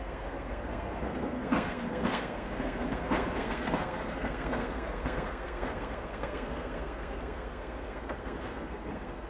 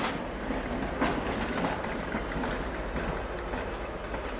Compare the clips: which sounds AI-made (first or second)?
first